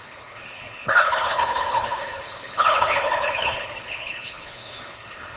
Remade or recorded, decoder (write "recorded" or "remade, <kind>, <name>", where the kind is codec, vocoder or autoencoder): remade, codec, HILCodec